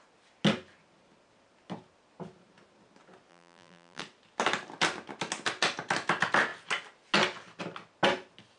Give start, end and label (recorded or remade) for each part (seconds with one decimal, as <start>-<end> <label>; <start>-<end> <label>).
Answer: 0.0-3.3 recorded; 3.3-4.0 remade; 4.0-8.6 recorded